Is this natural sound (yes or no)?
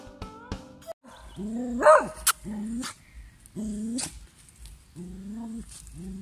yes